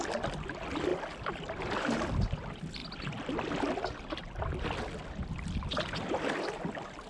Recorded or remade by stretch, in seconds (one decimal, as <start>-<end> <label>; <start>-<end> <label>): 0.0-7.1 recorded